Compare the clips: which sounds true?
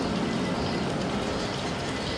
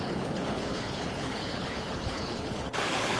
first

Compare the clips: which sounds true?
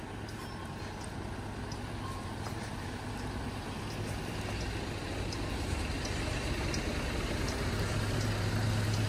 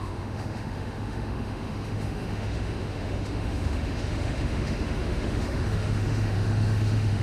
first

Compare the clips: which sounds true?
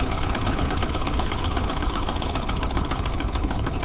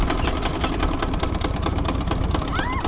second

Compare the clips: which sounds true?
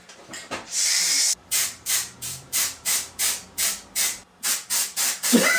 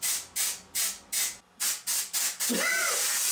second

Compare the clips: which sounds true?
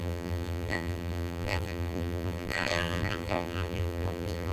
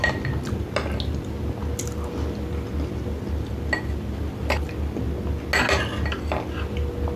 second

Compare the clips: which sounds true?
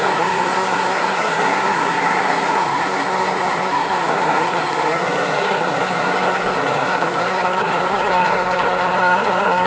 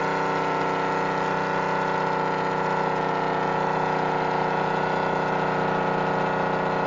second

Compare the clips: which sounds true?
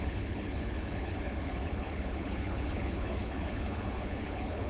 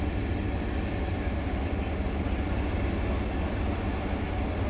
second